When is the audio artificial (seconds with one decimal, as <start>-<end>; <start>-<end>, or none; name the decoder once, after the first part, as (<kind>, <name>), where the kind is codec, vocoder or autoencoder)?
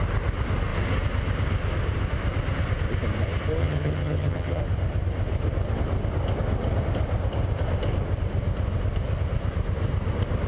3.6-4.6 (vocoder, HiFi-GAN)